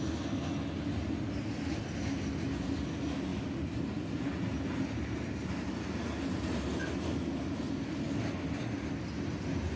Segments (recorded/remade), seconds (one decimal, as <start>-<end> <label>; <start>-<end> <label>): 0.0-9.8 recorded